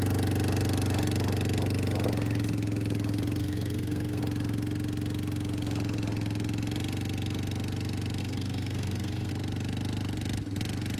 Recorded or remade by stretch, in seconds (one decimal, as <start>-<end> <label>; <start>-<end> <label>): 0.0-3.4 recorded; 3.4-4.2 remade; 4.2-8.2 recorded; 8.2-9.3 remade; 9.3-11.0 recorded